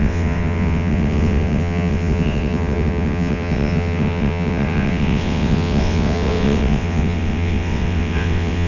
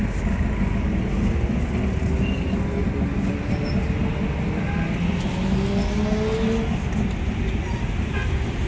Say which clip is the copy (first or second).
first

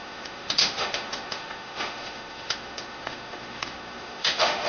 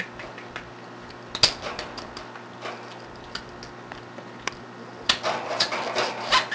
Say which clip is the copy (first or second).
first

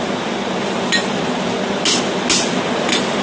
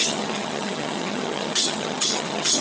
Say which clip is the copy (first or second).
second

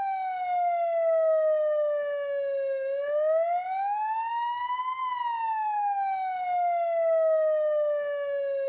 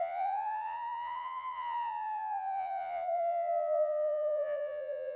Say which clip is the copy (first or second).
second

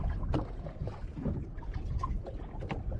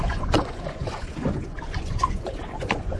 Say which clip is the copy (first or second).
second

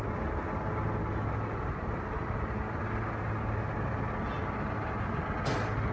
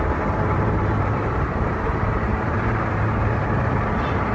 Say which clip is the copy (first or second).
second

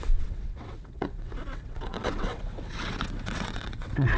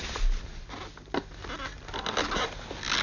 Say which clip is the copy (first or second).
first